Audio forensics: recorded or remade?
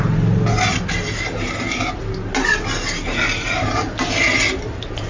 recorded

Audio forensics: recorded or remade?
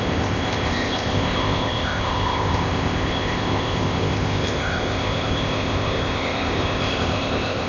remade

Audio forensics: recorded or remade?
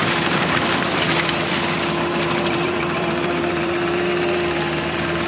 remade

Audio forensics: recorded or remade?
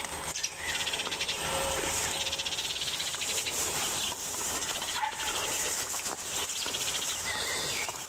remade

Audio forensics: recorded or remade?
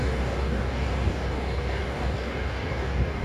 remade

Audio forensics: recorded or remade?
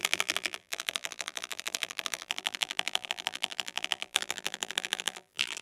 remade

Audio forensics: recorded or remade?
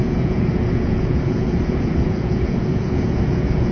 remade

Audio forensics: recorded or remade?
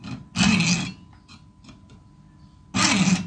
recorded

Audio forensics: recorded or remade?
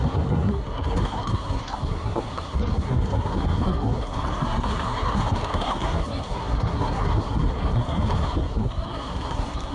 remade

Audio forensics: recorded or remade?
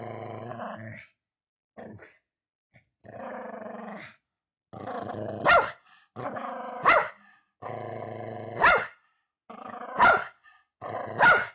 recorded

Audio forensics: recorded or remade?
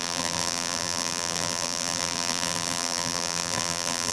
remade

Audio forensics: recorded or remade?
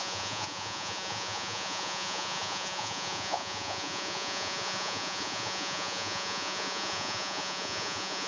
remade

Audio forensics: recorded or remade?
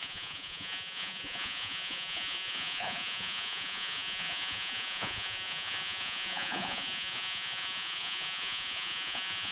remade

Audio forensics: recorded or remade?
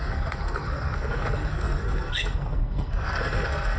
remade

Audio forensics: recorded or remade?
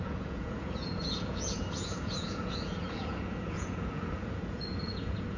remade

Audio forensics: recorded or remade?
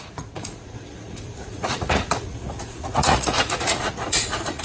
remade